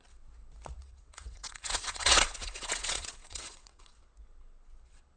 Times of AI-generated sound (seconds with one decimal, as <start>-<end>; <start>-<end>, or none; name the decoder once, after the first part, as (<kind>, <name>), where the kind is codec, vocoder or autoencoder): 0.8-3.9 (vocoder, WaveNeXt)